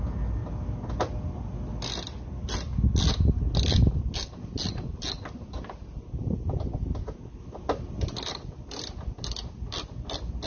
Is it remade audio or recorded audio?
recorded